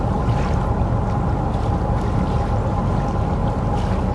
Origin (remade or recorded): recorded